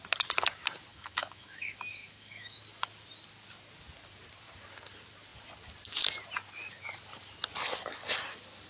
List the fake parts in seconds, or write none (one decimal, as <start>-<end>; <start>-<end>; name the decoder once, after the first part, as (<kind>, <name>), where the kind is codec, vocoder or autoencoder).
0.9-2.6 (autoencoder, DAC-VAE)